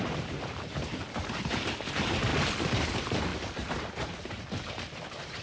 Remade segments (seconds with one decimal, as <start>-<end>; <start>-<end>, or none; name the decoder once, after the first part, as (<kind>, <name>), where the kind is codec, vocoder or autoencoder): 0.0-1.0 (vocoder, BigVGAN v2); 1.9-2.3; 2.8-5.4